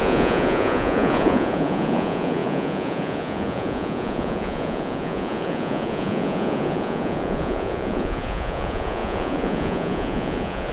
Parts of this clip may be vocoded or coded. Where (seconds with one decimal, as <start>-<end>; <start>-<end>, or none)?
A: 0.0-10.7